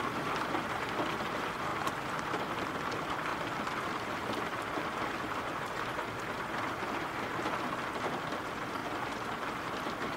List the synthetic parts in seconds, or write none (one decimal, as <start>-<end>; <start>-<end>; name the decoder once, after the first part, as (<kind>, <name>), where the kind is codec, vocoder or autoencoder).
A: 1.7-2.7 (vocoder, BigVGAN v2)